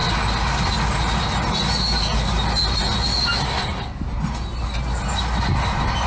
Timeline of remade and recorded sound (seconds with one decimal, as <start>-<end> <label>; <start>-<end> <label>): 0.0-6.1 recorded